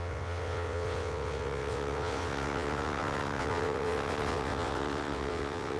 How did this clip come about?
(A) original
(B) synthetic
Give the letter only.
B